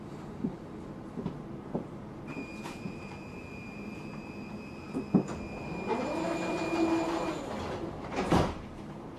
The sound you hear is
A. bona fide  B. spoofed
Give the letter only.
B